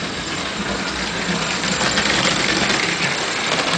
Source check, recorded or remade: recorded